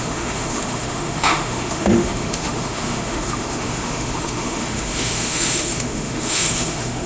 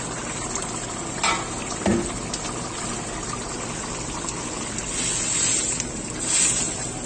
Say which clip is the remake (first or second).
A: first